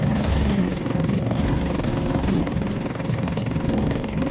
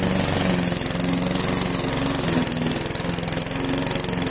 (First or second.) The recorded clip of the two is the second